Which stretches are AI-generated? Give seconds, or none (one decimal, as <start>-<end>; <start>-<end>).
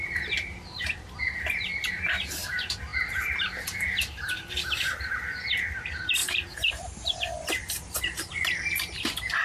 6.2-6.7; 7.6-8.5